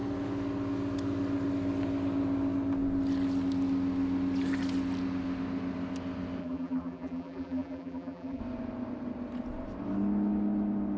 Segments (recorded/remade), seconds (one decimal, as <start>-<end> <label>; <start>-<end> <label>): 0.0-6.4 recorded; 6.4-8.4 remade; 8.4-11.0 recorded